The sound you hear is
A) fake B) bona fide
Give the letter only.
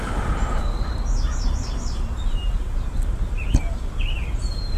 A